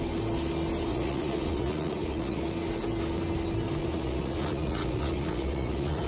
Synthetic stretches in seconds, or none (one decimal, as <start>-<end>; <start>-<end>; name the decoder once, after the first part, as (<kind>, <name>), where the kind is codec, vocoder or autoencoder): 0.9-2.4 (vocoder, Vocos); 3.9-6.1

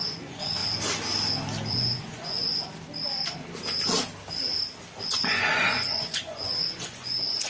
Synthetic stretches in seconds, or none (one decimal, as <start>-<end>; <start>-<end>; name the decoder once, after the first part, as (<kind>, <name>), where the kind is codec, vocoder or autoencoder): 0.0-0.6 (vocoder, Vocos); 1.7-2.5; 5.1-7.5

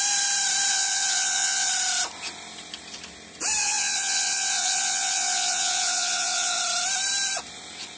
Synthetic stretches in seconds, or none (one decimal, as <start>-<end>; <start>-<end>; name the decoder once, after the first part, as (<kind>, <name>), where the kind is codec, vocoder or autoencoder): 0.7-1.7 (vocoder, WaveNeXt); 3.6-6.6

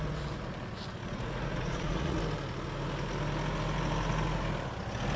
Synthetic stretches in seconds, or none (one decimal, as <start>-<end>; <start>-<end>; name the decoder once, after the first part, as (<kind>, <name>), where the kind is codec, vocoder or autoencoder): 1.0-2.2 (vocoder, Vocos)

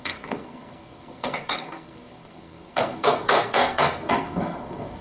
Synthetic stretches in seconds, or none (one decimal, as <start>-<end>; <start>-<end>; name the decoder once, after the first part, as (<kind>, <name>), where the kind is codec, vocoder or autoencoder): 0.0-5.0 (codec, SNAC)

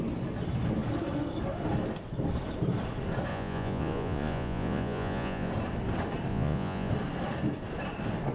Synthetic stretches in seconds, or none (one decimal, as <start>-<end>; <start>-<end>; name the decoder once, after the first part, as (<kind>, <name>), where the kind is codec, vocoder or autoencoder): 3.3-5.5 (vocoder, Vocos); 6.3-6.9

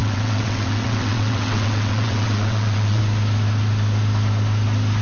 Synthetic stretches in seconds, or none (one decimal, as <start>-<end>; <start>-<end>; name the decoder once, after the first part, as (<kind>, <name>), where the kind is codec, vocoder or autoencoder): 0.0-3.0 (vocoder, WaveNeXt)

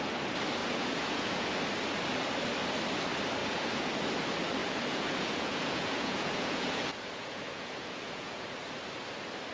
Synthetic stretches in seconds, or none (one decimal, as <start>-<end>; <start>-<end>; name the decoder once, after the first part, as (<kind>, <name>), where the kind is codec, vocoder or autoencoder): 0.6-1.6 (vocoder, Vocos); 3.4-3.9; 4.6-8.5